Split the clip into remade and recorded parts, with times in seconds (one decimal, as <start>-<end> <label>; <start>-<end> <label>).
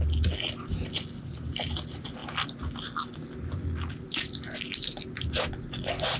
0.0-6.2 recorded